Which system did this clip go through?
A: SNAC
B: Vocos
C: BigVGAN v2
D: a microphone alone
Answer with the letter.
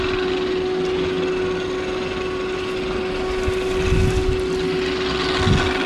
D